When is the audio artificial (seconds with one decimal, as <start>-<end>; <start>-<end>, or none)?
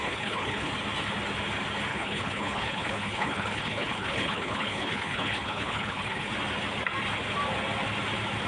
0.0-0.7; 1.9-6.3